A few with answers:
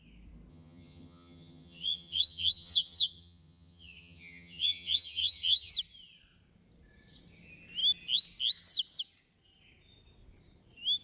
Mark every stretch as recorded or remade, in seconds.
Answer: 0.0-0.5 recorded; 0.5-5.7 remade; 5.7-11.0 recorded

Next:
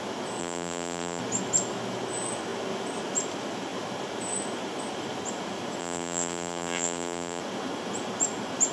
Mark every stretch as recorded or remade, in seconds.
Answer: 0.0-0.4 recorded; 0.4-1.2 remade; 1.2-5.8 recorded; 5.8-7.4 remade; 7.4-8.7 recorded

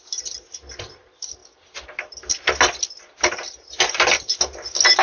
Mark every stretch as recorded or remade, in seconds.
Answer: 0.0-5.0 recorded